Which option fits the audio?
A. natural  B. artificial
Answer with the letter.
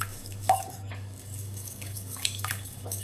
B